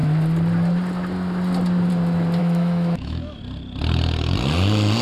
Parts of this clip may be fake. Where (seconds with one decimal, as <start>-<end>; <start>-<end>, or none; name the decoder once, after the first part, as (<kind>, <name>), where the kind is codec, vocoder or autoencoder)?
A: 2.4-3.4 (autoencoder, DAC-VAE)